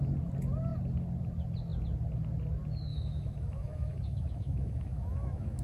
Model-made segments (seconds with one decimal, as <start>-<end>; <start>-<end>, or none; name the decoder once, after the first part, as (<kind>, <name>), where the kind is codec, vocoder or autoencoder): 2.9-5.6 (autoencoder, DAC-VAE)